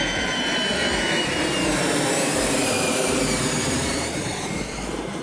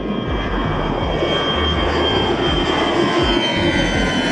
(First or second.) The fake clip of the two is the first